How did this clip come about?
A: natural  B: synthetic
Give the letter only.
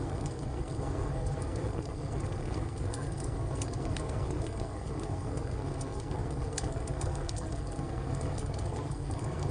B